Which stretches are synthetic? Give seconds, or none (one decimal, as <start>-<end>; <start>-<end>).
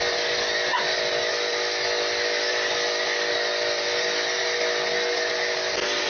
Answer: none